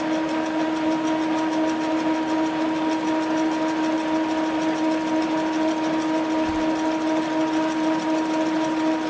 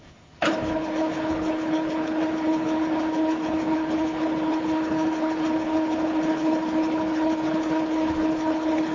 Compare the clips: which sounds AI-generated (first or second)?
second